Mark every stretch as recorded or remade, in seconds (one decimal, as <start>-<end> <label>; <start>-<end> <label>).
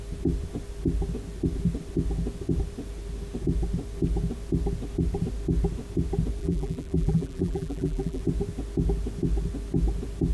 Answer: 0.0-6.4 recorded; 6.4-8.2 remade; 8.2-10.3 recorded